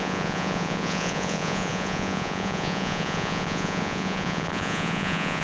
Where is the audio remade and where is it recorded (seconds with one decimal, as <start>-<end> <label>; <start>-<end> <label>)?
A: 0.0-5.4 remade